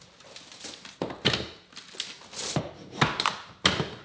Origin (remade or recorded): recorded